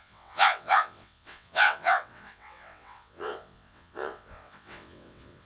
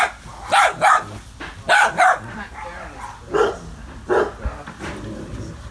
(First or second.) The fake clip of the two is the first